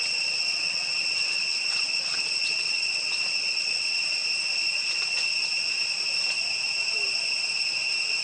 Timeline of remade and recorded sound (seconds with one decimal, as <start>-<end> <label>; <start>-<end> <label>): 0.0-4.2 remade; 4.2-8.2 recorded